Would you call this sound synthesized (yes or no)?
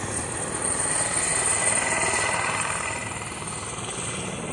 no